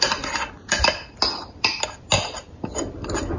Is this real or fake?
real